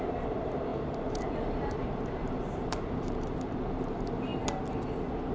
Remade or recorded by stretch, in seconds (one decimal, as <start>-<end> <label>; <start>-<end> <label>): 0.0-4.3 remade; 4.3-5.3 recorded